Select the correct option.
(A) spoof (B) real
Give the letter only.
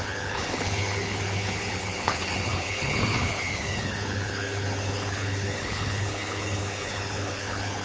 A